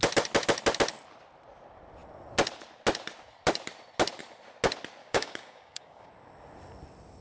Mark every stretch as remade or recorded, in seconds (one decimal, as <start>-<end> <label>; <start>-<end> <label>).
0.0-5.0 recorded; 5.0-6.1 remade; 6.1-7.2 recorded